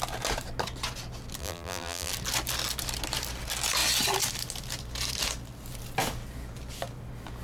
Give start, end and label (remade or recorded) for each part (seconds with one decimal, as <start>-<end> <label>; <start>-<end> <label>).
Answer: 0.0-1.4 recorded; 1.4-2.1 remade; 2.1-7.4 recorded